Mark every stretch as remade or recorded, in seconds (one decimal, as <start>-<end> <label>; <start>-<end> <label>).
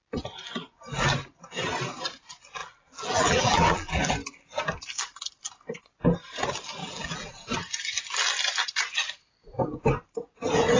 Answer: 0.0-2.6 recorded; 2.6-4.1 remade; 4.1-6.8 recorded; 6.8-7.3 remade; 7.3-10.8 recorded